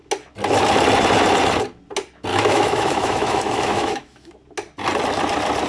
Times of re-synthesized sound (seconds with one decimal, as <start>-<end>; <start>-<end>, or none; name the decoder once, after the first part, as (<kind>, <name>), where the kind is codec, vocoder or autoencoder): 2.3-4.3 (autoencoder, DAC-VAE)